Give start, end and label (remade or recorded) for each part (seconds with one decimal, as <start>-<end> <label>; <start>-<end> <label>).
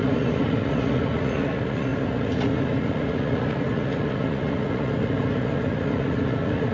0.0-6.7 remade